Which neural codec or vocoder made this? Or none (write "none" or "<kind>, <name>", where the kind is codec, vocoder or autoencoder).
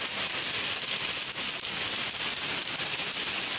none